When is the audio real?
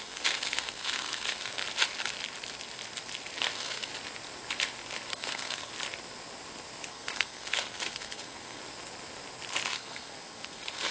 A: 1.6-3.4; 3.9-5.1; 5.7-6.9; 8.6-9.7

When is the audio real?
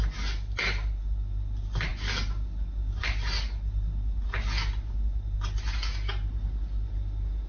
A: 0.0-7.5